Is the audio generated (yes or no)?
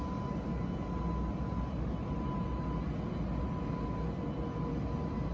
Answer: no